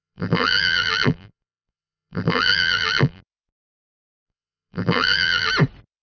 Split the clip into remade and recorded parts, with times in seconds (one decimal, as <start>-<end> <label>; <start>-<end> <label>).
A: 0.0-3.2 remade; 3.2-3.8 recorded; 3.8-5.5 remade; 5.5-6.0 recorded